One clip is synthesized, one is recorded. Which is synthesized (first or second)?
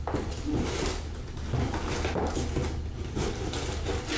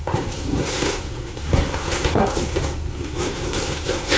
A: second